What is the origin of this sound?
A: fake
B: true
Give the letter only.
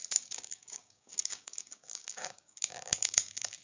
A